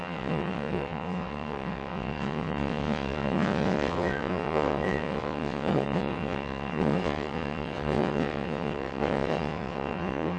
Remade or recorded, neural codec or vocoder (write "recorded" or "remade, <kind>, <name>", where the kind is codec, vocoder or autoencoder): remade, vocoder, WaveNeXt